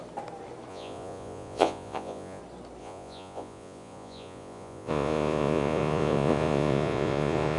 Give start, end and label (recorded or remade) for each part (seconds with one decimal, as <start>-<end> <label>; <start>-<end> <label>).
0.0-0.7 recorded; 0.7-2.4 remade; 2.4-2.8 recorded; 2.8-7.6 remade